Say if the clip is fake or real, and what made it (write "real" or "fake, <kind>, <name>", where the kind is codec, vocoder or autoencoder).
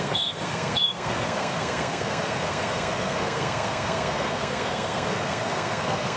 fake, codec, SNAC